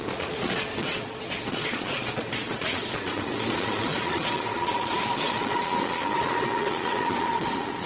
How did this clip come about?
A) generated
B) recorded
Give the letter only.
A